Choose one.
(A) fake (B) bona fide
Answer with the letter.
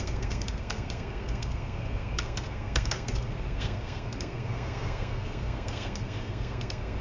A